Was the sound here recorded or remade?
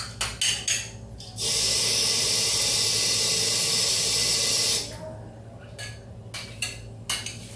recorded